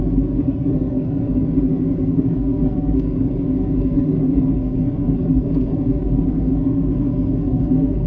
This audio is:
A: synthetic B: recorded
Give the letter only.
A